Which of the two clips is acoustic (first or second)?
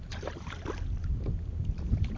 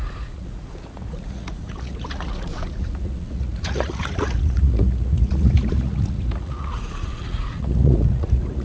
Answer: first